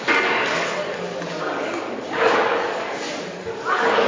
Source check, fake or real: fake